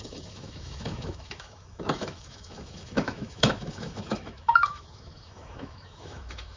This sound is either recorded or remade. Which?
remade